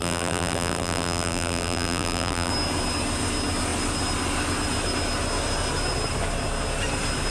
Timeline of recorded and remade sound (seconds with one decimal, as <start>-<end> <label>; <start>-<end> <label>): 0.0-2.5 remade; 2.5-7.3 recorded